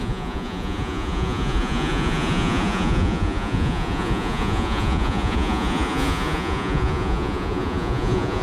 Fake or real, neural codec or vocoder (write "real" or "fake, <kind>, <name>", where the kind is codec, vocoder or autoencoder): fake, vocoder, Vocos